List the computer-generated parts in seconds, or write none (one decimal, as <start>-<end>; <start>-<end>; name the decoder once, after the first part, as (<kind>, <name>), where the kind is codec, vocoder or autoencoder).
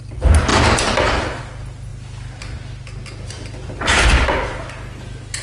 none